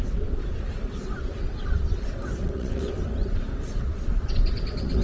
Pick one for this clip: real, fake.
fake